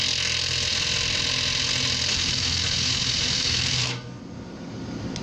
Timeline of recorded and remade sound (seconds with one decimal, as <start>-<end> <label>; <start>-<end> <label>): 0.0-2.1 recorded; 2.1-4.2 remade; 4.2-5.2 recorded

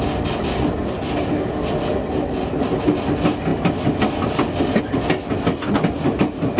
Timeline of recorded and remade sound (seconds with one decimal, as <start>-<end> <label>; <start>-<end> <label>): 0.0-6.6 recorded

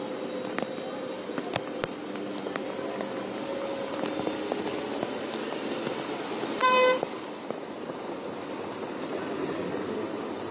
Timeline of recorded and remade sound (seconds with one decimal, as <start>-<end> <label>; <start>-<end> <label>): 0.0-10.5 recorded

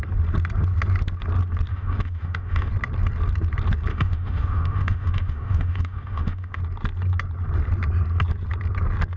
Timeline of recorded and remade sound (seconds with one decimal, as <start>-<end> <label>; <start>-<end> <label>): 0.0-1.7 recorded; 1.7-2.7 remade; 2.7-3.9 recorded; 3.9-6.6 remade; 6.6-9.2 recorded

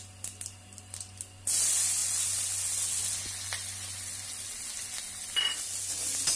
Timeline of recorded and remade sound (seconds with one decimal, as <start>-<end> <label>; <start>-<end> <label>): 0.0-6.4 recorded

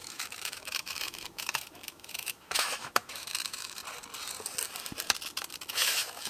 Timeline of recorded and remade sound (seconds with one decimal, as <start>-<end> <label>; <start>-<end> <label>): 0.0-3.8 remade; 3.8-5.7 recorded; 5.7-6.3 remade